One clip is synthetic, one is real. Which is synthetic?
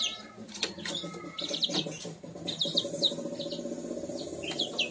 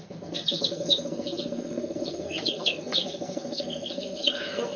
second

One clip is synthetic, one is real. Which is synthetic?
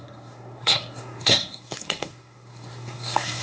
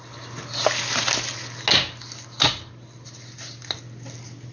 first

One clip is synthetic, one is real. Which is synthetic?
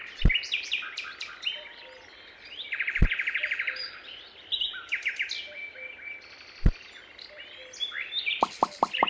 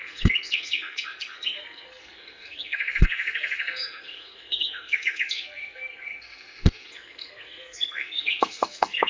second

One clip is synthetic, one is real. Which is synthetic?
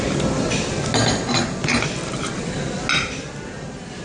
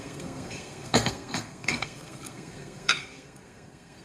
second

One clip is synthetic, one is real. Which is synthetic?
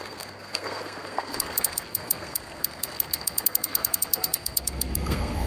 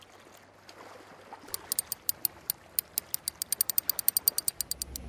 first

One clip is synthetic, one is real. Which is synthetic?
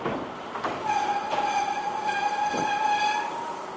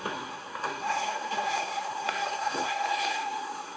second